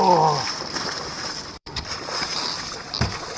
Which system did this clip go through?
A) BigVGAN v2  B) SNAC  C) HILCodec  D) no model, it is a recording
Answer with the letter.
A